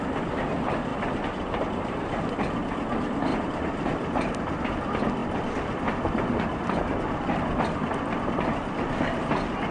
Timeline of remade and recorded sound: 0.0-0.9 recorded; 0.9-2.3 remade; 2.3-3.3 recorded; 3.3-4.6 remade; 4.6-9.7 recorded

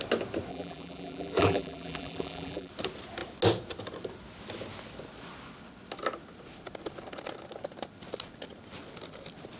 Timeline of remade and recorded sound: 0.0-0.5 recorded; 0.5-2.7 remade; 2.7-9.6 recorded

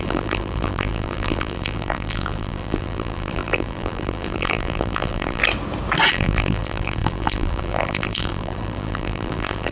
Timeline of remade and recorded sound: 0.0-5.4 remade; 5.4-6.1 recorded; 6.1-9.7 remade